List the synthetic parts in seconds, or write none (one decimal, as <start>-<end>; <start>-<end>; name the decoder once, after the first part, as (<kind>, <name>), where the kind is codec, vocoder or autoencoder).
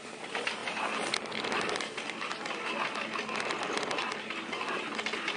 none